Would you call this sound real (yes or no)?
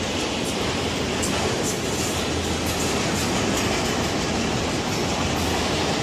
yes